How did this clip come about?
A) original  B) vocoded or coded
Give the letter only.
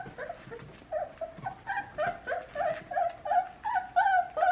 A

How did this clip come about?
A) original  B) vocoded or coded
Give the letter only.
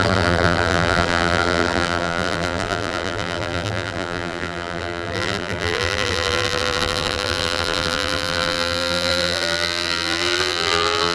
B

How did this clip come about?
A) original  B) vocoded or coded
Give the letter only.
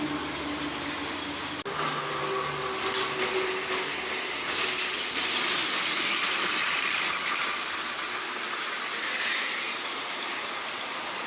A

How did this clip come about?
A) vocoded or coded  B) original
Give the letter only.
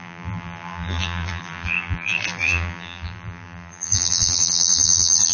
A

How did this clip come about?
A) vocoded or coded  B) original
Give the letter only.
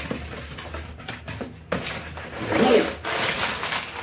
B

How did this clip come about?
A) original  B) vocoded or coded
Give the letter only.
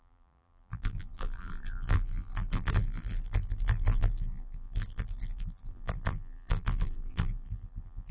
B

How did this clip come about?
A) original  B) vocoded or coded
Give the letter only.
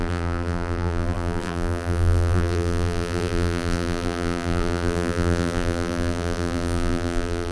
B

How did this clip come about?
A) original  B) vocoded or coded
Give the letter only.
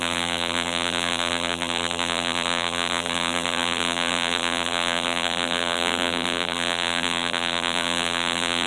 B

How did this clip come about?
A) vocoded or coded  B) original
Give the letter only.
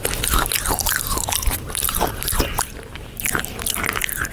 B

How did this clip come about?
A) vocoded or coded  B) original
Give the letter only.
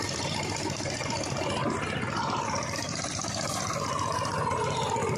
B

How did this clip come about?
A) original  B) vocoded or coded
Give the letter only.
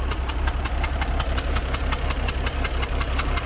B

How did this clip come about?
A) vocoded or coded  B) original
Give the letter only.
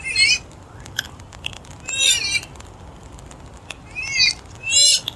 A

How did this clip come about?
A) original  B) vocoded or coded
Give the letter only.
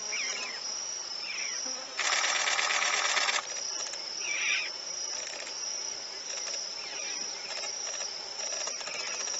A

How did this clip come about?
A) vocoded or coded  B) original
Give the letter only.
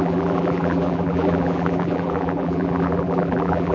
A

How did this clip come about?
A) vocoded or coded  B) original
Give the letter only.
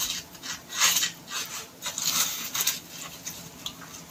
B